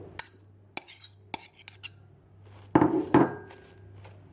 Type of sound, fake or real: real